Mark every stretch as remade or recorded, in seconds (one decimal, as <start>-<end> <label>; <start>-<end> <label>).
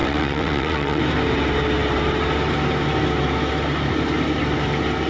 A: 0.0-1.0 remade; 1.0-5.1 recorded